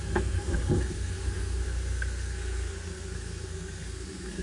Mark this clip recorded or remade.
remade